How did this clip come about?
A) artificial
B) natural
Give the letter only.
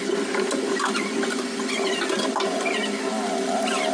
B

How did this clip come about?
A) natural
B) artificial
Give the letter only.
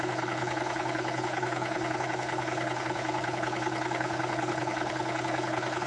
B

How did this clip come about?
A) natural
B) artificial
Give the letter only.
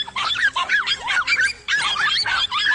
A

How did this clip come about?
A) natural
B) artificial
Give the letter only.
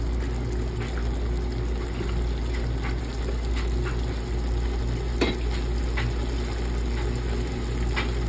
A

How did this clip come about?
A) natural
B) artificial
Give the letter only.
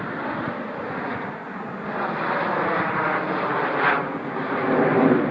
A